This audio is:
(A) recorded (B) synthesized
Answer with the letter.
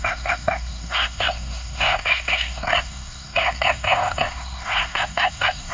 B